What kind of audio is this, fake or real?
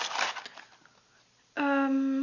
real